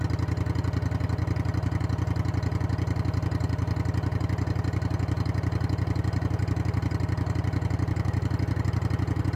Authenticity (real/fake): real